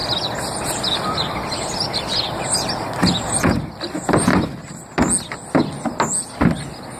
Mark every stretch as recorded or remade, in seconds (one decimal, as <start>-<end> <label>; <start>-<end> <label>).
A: 0.0-3.7 remade; 3.7-7.0 recorded